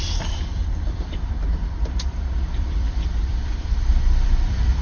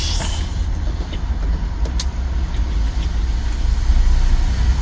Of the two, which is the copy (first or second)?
first